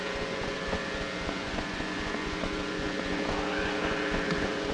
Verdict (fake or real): fake